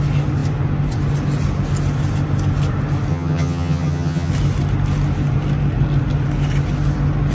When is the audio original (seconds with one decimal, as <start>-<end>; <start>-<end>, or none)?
0.0-3.1; 4.3-7.3